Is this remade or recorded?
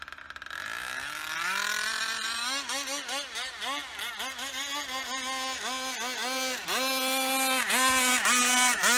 recorded